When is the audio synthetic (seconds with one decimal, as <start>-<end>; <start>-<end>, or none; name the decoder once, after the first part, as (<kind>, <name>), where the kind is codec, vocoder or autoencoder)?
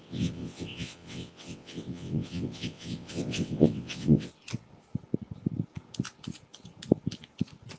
0.0-4.3 (vocoder, WaveNeXt)